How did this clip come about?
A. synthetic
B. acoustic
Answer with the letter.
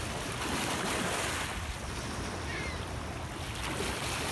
B